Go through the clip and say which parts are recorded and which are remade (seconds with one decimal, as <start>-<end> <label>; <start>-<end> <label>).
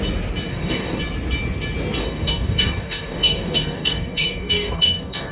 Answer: 0.0-0.5 recorded; 0.5-1.0 remade; 1.0-2.0 recorded; 2.0-5.3 remade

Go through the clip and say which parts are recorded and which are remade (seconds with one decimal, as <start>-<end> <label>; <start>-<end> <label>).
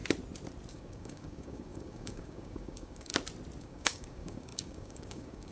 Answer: 0.0-0.7 recorded; 0.7-3.1 remade; 3.1-3.6 recorded; 3.6-5.5 remade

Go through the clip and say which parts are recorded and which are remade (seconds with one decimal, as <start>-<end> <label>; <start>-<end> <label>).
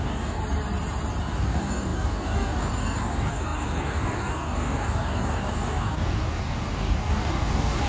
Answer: 0.0-0.4 remade; 0.4-1.2 recorded; 1.2-7.9 remade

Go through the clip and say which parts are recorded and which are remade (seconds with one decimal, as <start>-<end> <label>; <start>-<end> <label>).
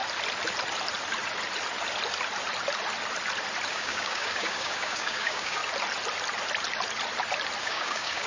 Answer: 0.0-3.7 recorded; 3.7-5.6 remade; 5.6-7.6 recorded; 7.6-8.3 remade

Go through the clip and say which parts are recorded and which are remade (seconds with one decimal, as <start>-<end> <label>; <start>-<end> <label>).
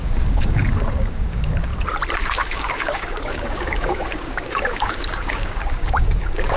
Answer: 0.0-1.7 remade; 1.7-2.2 recorded; 2.2-6.6 remade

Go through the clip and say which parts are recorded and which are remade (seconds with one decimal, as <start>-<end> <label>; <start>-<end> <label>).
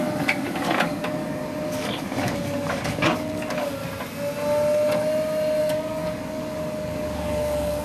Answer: 0.0-3.8 remade; 3.8-5.6 recorded; 5.6-7.8 remade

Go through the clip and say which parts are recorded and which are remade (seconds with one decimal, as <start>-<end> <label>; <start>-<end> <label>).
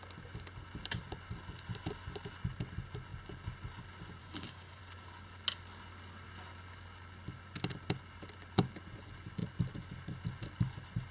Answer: 0.0-4.2 recorded; 4.2-4.8 remade; 4.8-11.1 recorded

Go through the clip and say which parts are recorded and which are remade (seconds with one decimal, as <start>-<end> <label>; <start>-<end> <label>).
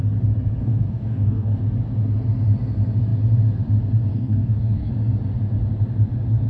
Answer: 0.0-0.6 recorded; 0.6-1.6 remade; 1.6-4.1 recorded; 4.1-4.9 remade; 4.9-6.5 recorded